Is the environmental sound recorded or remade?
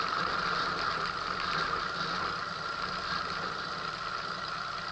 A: recorded